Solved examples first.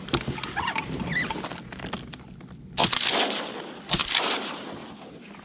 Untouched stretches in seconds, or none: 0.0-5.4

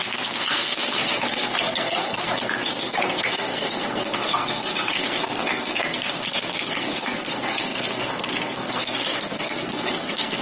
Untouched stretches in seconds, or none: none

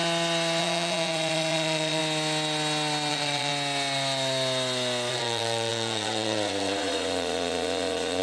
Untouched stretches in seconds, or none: 0.0-0.6; 2.0-3.1; 3.5-5.1

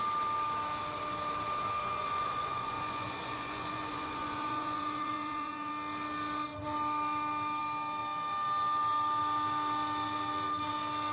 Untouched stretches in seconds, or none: 0.0-1.8; 5.7-11.1

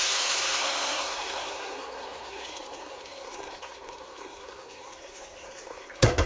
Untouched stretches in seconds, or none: none

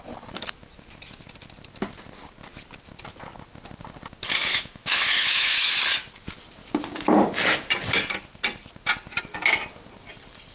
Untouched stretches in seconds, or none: 0.0-4.4; 5.7-10.5